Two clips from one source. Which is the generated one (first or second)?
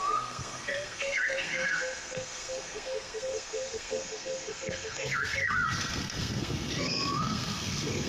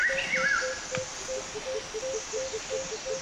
first